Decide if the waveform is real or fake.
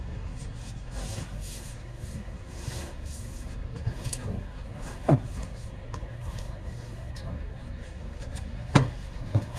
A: fake